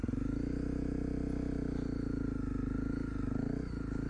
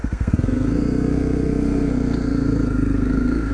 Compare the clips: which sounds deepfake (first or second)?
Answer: second